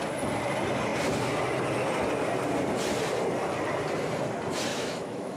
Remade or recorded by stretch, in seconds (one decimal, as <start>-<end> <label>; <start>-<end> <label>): 0.0-4.7 recorded; 4.7-5.4 remade